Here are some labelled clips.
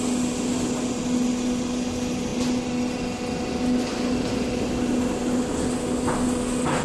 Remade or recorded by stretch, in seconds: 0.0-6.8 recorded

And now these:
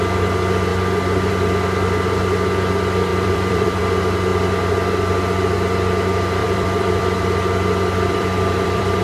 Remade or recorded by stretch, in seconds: 0.0-3.1 recorded; 3.1-3.8 remade; 3.8-6.4 recorded; 6.4-9.0 remade